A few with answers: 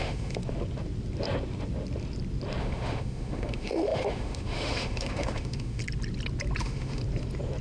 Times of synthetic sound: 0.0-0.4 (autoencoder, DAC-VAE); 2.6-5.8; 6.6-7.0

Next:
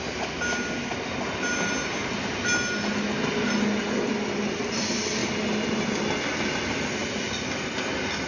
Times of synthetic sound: none

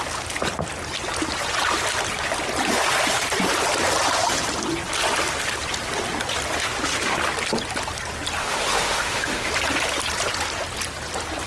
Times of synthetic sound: 8.4-9.5 (autoencoder, DAC-VAE)

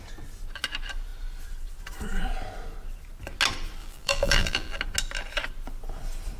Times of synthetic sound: 3.8-4.8 (vocoder, BigVGAN v2)

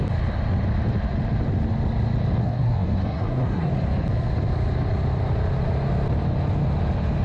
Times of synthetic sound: 2.4-3.7 (codec, SNAC)

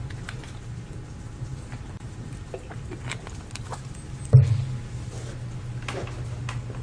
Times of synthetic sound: none

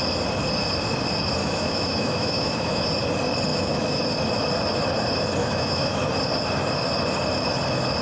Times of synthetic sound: 1.4-2.8 (autoencoder, DAC-VAE); 3.5-4.0; 5.4-6.1